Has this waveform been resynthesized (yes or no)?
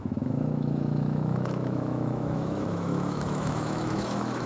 yes